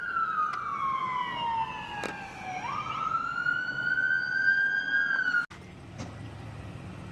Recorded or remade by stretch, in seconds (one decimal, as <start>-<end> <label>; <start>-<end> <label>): 0.0-7.1 recorded